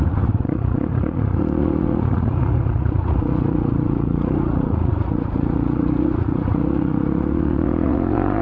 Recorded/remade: remade